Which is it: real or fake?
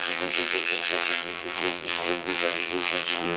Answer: fake